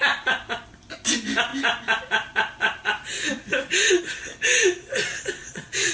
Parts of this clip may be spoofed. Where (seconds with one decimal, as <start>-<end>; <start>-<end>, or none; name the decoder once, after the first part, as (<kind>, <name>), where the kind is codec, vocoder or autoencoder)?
5.4-5.9 (vocoder, Vocos)